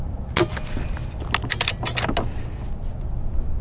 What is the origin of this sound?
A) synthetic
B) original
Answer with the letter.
B